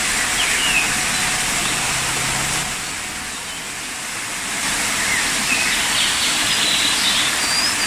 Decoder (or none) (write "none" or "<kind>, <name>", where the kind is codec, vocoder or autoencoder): none